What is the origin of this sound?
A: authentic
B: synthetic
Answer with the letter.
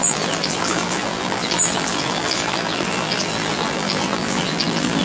B